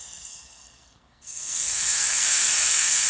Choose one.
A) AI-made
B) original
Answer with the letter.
A